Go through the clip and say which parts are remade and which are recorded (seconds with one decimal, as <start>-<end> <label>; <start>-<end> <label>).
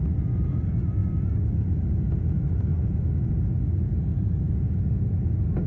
0.0-5.7 recorded